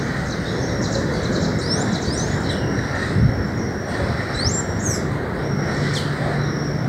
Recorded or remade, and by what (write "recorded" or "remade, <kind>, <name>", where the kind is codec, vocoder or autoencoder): recorded